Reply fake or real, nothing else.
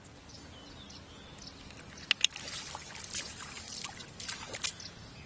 real